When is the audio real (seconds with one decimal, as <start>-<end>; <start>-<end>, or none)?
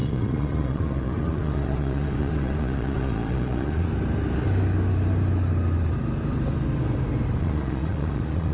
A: 3.9-7.4